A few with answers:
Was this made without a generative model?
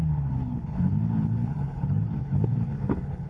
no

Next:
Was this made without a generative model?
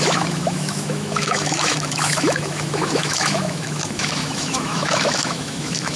no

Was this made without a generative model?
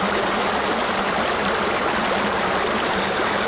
yes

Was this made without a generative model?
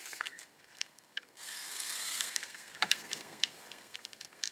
no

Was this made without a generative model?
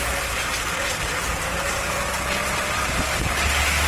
yes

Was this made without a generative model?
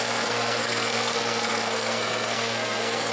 no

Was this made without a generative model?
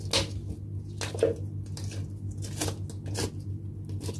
yes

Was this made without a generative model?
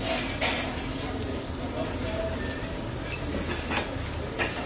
yes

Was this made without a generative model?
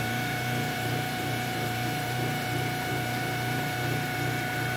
no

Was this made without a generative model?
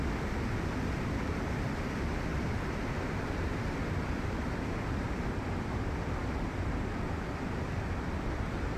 no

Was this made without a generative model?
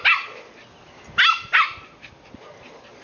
yes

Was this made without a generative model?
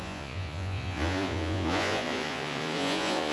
no